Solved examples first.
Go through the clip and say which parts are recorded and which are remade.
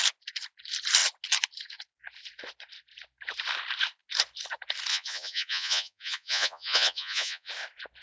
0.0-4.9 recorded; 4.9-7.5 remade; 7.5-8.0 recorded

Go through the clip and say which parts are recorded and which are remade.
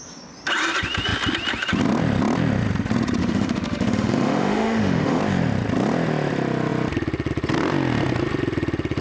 0.0-3.2 recorded; 3.2-5.2 remade; 5.2-9.0 recorded